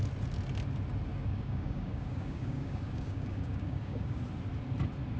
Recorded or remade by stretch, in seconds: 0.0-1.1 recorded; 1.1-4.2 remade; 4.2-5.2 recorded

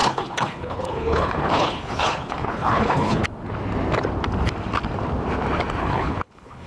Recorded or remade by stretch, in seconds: 0.0-3.2 remade; 3.2-5.8 recorded; 5.8-6.7 remade

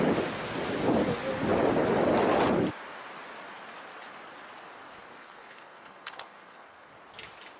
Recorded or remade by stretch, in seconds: 0.0-5.2 recorded; 5.2-6.9 remade; 6.9-7.6 recorded

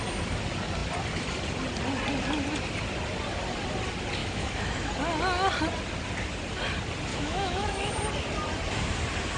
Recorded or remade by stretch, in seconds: 0.0-4.2 recorded; 4.2-4.9 remade; 4.9-7.1 recorded; 7.1-7.9 remade; 7.9-9.4 recorded

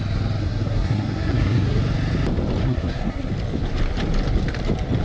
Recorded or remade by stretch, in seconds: 0.0-0.4 recorded; 0.4-1.8 remade; 1.8-2.6 recorded; 2.6-3.3 remade; 3.3-5.0 recorded

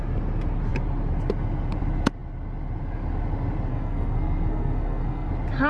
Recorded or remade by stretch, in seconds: 0.0-3.7 recorded; 3.7-5.3 remade; 5.3-5.7 recorded